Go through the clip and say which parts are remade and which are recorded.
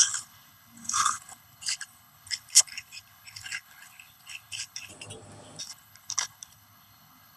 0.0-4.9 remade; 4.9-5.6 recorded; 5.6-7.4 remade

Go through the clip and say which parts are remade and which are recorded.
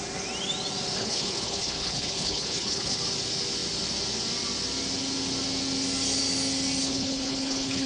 0.0-1.0 recorded; 1.0-3.0 remade; 3.0-6.8 recorded; 6.8-7.9 remade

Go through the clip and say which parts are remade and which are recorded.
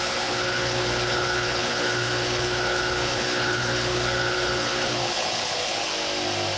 0.0-5.9 remade; 5.9-6.6 recorded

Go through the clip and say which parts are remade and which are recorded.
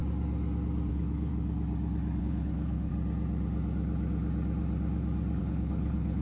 0.0-0.9 recorded; 0.9-1.3 remade; 1.3-2.2 recorded; 2.2-2.9 remade; 2.9-5.4 recorded; 5.4-6.2 remade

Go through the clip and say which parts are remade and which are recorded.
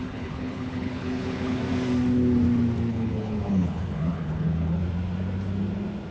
0.0-1.6 remade; 1.6-2.9 recorded; 2.9-4.8 remade; 4.8-6.1 recorded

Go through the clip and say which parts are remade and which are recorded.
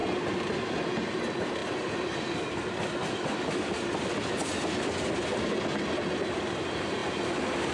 0.0-7.7 recorded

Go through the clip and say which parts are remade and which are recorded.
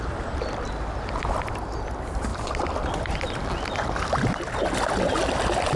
0.0-5.8 recorded